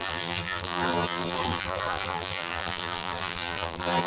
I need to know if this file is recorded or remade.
remade